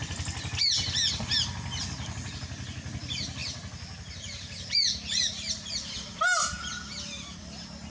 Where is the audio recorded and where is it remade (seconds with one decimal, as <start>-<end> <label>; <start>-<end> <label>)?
0.0-7.9 recorded